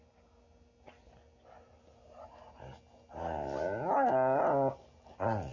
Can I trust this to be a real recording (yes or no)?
yes